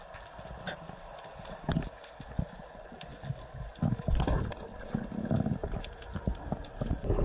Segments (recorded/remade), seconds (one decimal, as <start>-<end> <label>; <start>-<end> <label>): 0.0-7.2 recorded